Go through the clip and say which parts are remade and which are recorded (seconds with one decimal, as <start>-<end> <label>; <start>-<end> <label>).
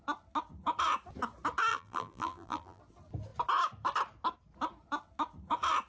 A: 0.0-1.7 recorded; 1.7-2.8 remade; 2.8-5.9 recorded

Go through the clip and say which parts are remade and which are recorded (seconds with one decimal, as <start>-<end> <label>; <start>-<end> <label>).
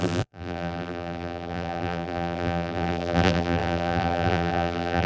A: 0.0-5.1 remade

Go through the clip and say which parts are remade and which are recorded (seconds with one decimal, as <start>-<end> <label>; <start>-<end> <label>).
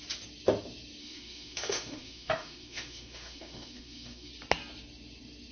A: 0.0-1.0 recorded; 1.0-4.3 remade; 4.3-5.5 recorded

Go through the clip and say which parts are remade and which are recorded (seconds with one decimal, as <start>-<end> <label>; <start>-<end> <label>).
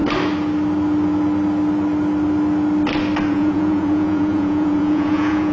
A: 0.0-3.3 recorded; 3.3-5.5 remade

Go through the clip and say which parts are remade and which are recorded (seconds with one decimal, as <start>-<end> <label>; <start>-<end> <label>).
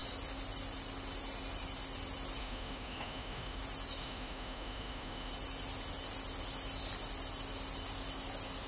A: 0.0-2.4 recorded; 2.4-3.6 remade; 3.6-4.0 recorded; 4.0-5.3 remade; 5.3-8.7 recorded